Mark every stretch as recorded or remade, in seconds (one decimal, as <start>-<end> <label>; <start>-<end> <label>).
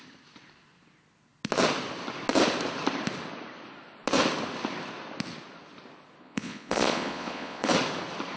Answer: 0.0-6.2 recorded; 6.2-7.7 remade; 7.7-8.4 recorded